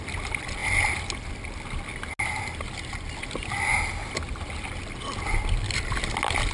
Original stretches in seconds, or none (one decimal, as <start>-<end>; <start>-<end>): 0.0-6.5